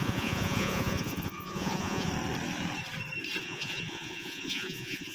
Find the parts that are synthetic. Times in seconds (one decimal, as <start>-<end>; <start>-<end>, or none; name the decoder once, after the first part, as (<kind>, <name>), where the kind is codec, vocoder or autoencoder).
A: 0.0-2.1 (vocoder, Vocos); 3.4-5.1